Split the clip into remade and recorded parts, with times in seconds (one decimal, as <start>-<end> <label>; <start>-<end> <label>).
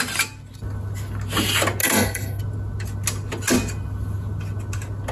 0.0-1.8 recorded; 1.8-2.4 remade; 2.4-5.1 recorded